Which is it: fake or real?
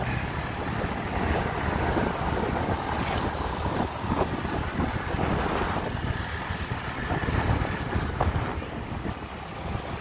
real